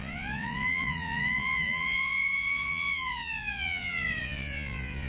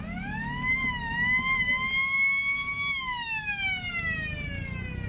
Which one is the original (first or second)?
second